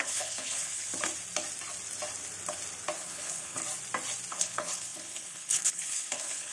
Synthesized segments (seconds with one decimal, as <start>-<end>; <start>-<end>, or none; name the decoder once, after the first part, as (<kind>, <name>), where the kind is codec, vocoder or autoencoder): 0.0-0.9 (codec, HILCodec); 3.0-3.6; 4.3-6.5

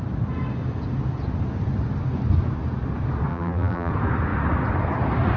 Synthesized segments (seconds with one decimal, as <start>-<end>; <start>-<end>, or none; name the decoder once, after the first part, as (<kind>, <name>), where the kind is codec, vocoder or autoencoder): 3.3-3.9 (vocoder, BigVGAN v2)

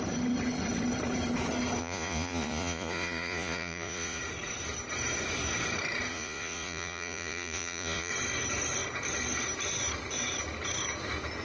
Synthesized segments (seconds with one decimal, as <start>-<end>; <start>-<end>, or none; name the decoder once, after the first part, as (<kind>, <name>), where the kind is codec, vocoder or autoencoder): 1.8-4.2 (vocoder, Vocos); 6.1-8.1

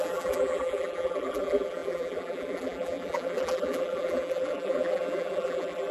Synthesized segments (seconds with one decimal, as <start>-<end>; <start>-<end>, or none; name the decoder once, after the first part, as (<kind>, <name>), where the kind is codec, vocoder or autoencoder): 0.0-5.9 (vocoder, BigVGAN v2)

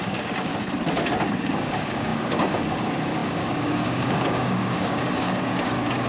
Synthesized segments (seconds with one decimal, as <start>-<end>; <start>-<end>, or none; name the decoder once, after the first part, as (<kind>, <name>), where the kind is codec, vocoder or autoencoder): 0.0-0.5 (codec, DAC); 1.3-6.1

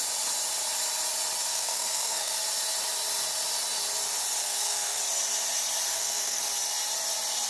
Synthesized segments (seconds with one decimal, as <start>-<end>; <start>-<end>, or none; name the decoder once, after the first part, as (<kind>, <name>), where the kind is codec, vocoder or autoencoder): 1.5-2.4 (codec, SNAC); 4.4-5.0; 5.9-6.4

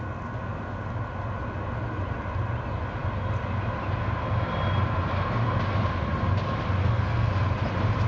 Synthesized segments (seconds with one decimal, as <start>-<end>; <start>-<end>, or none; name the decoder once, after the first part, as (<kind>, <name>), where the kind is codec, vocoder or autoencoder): 6.8-7.3 (codec, SNAC)

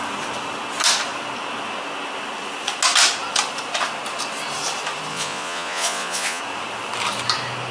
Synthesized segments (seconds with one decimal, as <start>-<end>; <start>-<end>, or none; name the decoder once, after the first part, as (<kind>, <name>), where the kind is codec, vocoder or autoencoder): 5.1-6.4 (vocoder, Vocos)